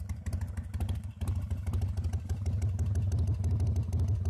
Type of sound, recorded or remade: recorded